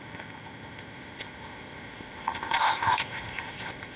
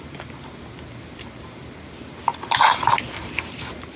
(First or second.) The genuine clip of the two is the second